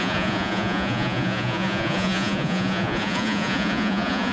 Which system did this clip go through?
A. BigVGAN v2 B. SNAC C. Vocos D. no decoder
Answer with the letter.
C